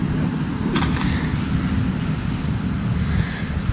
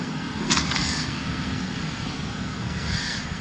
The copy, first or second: second